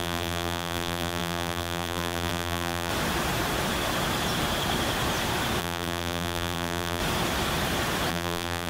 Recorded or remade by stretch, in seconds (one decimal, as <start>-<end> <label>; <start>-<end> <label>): 0.0-2.9 remade; 2.9-5.6 recorded; 5.6-7.0 remade; 7.0-8.1 recorded; 8.1-8.7 remade

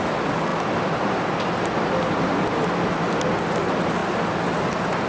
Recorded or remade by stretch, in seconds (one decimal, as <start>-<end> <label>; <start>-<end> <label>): 0.0-5.1 recorded

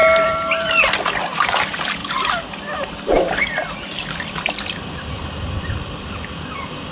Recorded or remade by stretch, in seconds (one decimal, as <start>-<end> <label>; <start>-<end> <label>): 0.0-0.9 remade; 0.9-2.0 recorded; 2.0-6.1 remade; 6.1-6.9 recorded